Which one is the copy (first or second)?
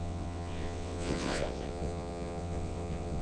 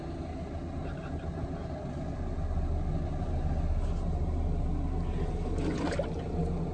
first